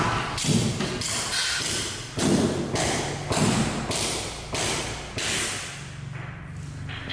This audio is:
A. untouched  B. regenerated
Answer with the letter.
A